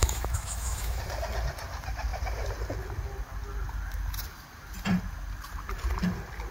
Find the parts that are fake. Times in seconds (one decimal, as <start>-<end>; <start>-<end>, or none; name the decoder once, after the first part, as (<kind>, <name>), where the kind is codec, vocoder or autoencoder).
0.0-1.0 (autoencoder, DAC-VAE)